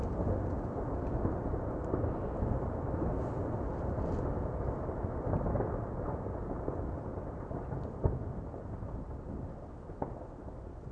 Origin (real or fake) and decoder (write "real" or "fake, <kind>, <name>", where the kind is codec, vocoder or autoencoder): real